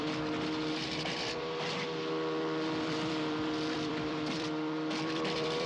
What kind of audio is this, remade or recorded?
remade